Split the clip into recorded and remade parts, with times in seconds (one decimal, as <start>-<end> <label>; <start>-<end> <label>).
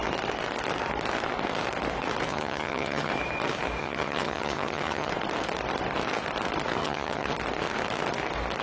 0.0-2.3 recorded; 2.3-3.1 remade; 3.1-3.8 recorded; 3.8-5.1 remade; 5.1-6.8 recorded; 6.8-7.3 remade; 7.3-8.6 recorded